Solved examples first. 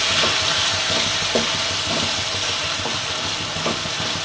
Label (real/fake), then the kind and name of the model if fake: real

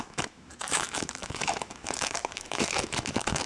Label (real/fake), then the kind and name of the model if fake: fake, autoencoder, DAC-VAE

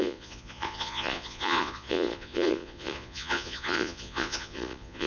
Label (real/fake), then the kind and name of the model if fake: fake, vocoder, Vocos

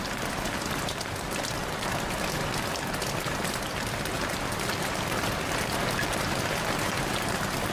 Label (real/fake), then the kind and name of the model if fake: real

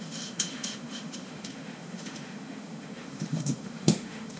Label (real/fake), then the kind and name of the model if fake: fake, autoencoder, DAC-VAE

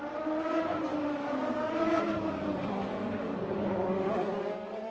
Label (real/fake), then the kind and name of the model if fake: fake, codec, DAC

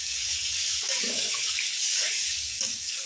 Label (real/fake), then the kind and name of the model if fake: fake, codec, DAC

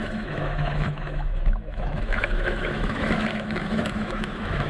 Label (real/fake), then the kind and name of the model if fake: fake, autoencoder, DAC-VAE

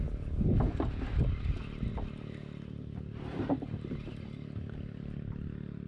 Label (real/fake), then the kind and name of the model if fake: real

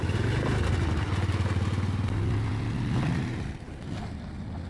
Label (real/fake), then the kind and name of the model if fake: real